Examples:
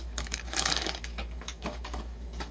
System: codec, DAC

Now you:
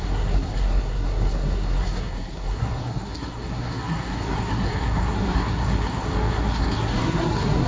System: codec, SNAC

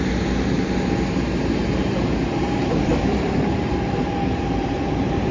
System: vocoder, BigVGAN v2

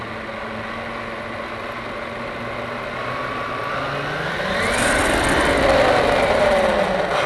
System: none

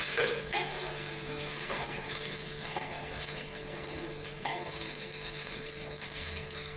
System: codec, SNAC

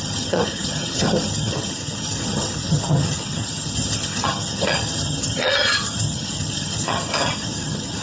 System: vocoder, HiFi-GAN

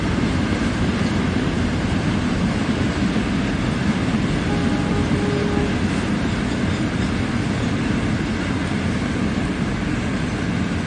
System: none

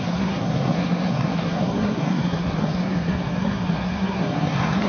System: codec, SNAC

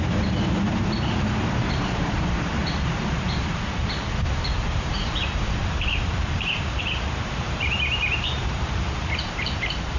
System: vocoder, BigVGAN v2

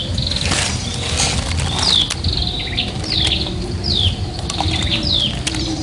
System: none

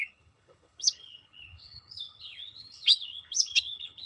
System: codec, HILCodec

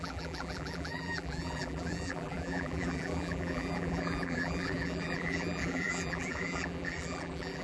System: vocoder, BigVGAN v2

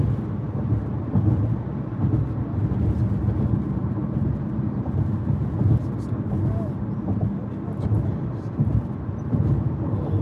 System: none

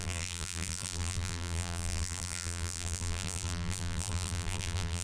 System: vocoder, BigVGAN v2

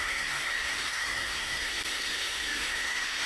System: codec, SNAC